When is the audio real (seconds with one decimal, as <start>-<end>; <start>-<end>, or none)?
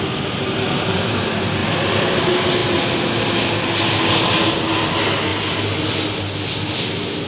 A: 0.0-1.6; 2.2-2.6; 3.8-5.3; 5.9-7.3